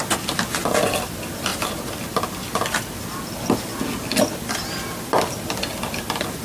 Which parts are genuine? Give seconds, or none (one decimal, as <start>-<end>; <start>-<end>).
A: 0.0-6.4